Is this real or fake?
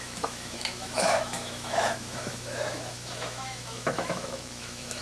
fake